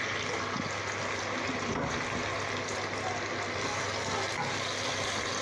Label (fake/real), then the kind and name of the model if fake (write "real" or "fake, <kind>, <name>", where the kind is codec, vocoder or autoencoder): real